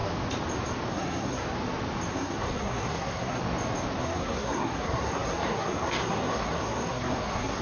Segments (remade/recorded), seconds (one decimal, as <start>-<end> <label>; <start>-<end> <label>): 0.0-0.9 recorded; 0.9-1.4 remade; 1.4-2.1 recorded; 2.1-3.4 remade; 3.4-4.0 recorded; 4.0-7.6 remade

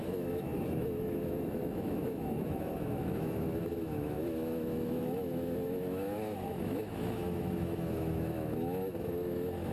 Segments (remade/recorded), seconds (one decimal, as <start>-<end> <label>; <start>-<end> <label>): 0.0-9.7 remade

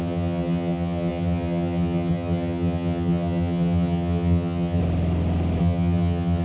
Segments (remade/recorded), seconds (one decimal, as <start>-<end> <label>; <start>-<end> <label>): 0.0-4.8 remade; 4.8-5.6 recorded; 5.6-6.4 remade

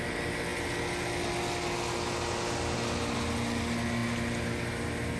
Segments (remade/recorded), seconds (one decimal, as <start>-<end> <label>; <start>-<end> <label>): 0.0-5.2 recorded

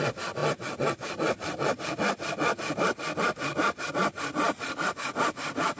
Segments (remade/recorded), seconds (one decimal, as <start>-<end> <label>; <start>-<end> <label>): 0.0-5.8 recorded

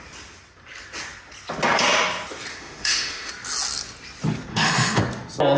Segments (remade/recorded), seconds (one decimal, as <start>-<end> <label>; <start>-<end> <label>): 0.0-2.5 recorded; 2.5-3.3 remade; 3.3-4.5 recorded; 4.5-5.0 remade; 5.0-5.6 recorded

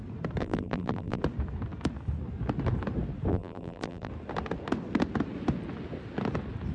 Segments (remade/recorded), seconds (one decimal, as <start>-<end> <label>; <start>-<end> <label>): 0.0-0.4 recorded; 0.4-1.2 remade; 1.2-3.3 recorded; 3.3-4.1 remade; 4.1-6.7 recorded